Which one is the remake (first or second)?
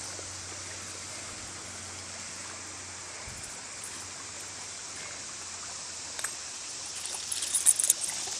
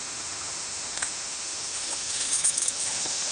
second